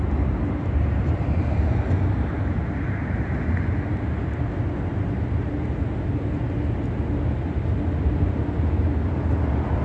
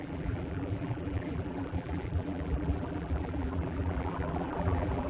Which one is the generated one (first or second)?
second